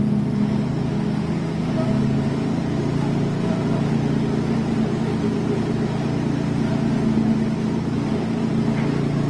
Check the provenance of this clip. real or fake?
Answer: real